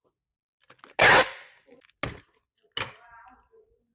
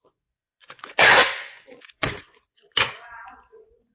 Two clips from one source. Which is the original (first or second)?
first